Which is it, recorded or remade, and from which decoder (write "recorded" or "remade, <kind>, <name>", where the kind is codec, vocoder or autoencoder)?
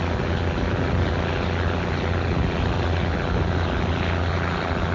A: recorded